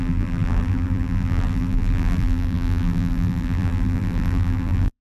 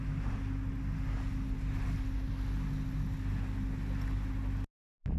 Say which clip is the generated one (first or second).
first